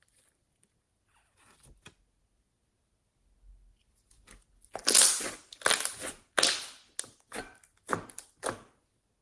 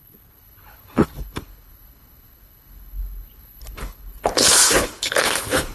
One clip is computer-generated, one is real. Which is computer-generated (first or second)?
second